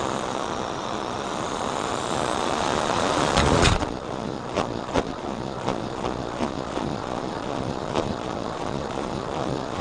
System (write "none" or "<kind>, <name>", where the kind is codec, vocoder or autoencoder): vocoder, Vocos